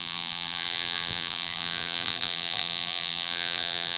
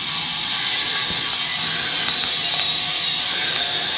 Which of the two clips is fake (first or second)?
first